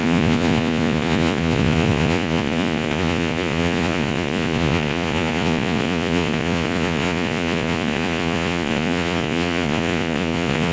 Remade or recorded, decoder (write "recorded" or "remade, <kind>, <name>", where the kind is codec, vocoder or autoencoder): remade, vocoder, Vocos